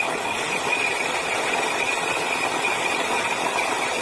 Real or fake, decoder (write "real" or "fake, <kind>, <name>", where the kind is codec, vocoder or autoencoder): real